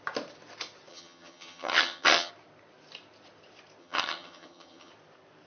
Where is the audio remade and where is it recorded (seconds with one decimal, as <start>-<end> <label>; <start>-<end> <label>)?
0.0-0.9 recorded; 0.9-2.3 remade; 2.3-3.8 recorded; 3.8-4.9 remade; 4.9-5.5 recorded